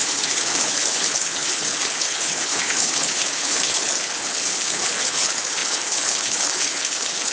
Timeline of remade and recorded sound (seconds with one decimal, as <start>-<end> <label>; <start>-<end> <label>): 0.0-7.3 remade